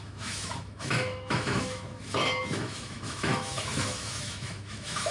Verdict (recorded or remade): remade